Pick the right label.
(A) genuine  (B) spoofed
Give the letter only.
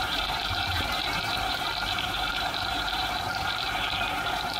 B